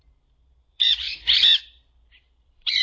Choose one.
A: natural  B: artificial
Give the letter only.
B